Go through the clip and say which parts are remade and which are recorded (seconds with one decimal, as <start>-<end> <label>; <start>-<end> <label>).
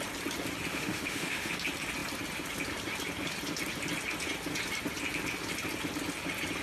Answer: 0.0-0.7 recorded; 0.7-1.5 remade; 1.5-6.6 recorded